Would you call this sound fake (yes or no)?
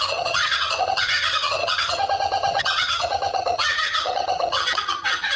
yes